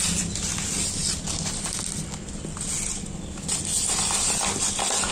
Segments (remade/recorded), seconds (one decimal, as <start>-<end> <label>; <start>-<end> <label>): 0.0-5.1 recorded